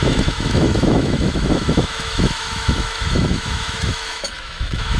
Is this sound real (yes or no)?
no